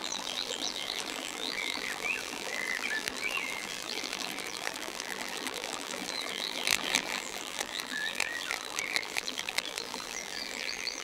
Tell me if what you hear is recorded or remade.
remade